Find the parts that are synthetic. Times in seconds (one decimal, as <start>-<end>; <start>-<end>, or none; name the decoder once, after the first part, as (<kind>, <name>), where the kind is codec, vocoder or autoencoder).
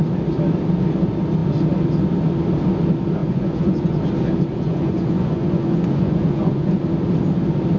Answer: 3.2-4.0 (vocoder, Vocos); 4.5-6.8